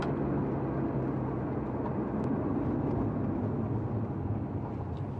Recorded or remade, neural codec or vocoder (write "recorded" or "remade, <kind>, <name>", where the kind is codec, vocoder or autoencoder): recorded